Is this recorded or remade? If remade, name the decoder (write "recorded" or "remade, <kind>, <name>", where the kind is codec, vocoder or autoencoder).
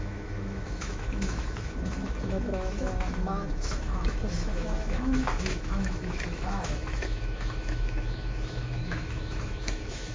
remade, autoencoder, DAC-VAE